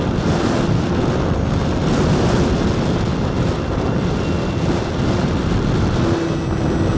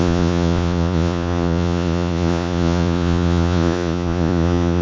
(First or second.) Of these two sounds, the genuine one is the first